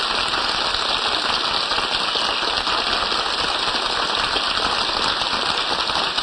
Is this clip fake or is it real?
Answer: real